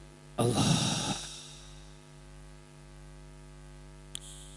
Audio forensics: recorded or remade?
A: recorded